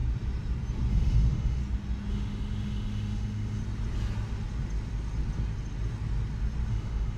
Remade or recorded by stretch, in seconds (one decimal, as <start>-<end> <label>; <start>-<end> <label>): 0.0-0.9 recorded; 0.9-1.6 remade; 1.6-2.1 recorded; 2.1-3.6 remade; 3.6-6.7 recorded; 6.7-7.2 remade